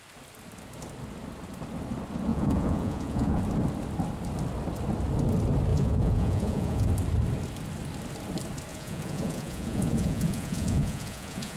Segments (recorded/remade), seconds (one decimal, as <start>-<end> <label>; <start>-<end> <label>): 0.0-2.3 recorded; 2.3-3.4 remade; 3.4-5.7 recorded; 5.7-6.9 remade; 6.9-8.7 recorded; 8.7-11.6 remade

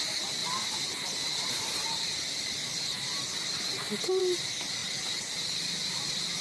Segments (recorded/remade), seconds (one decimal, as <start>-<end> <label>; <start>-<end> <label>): 0.0-6.4 recorded